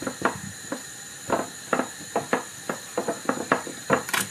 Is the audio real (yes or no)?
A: no